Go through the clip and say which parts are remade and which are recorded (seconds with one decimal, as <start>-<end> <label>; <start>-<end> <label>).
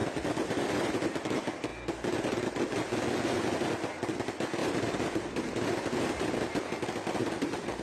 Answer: 0.0-0.7 remade; 0.7-4.6 recorded; 4.6-5.4 remade; 5.4-7.8 recorded